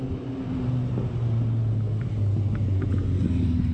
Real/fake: real